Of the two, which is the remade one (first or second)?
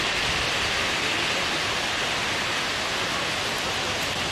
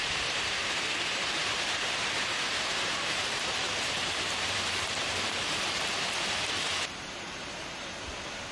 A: second